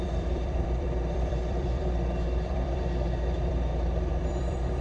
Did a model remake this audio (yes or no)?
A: yes